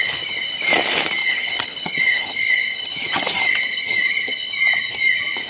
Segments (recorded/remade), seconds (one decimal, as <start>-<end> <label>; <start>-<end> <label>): 0.0-1.2 recorded; 1.2-4.5 remade; 4.5-5.5 recorded

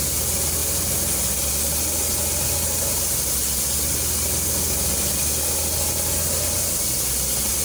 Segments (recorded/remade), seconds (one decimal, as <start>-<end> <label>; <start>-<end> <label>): 0.0-7.6 recorded

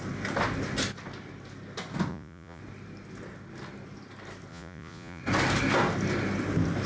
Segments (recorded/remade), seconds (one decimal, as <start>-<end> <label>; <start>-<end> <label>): 0.0-2.1 recorded; 2.1-2.6 remade; 2.6-4.5 recorded; 4.5-5.2 remade; 5.2-6.9 recorded